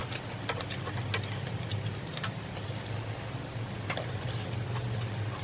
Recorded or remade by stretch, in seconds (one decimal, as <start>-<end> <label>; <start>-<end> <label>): 0.0-5.4 recorded